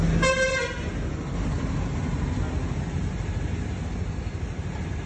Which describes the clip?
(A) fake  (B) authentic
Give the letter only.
B